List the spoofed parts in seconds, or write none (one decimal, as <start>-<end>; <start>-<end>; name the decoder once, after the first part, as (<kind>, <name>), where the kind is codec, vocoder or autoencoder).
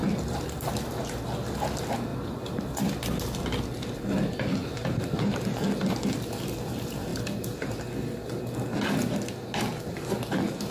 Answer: 0.0-0.7 (vocoder, BigVGAN v2); 2.1-3.0; 7.1-8.4